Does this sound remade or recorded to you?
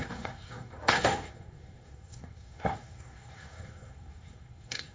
remade